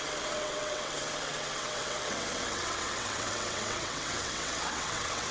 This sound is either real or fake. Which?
fake